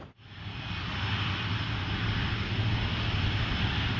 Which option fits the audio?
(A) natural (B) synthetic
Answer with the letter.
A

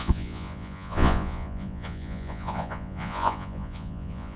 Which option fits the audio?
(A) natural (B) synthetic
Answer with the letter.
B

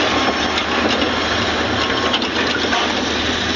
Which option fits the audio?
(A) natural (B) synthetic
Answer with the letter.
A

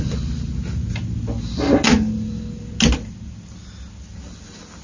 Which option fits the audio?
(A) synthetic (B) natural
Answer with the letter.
B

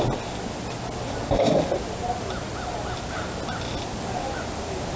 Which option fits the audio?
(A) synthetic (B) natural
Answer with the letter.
B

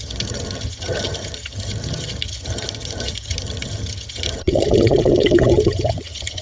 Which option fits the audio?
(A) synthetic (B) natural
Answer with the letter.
A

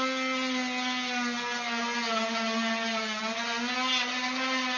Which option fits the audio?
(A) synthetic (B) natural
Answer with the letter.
B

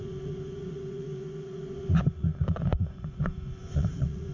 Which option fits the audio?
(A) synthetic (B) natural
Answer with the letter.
A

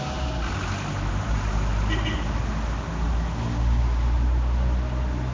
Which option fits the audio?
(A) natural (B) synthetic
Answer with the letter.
A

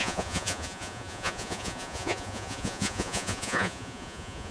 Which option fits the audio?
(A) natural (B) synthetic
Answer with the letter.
B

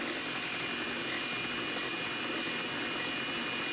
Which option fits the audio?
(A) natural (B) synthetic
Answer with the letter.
A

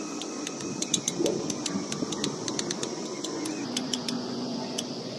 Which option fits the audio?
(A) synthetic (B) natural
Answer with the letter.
A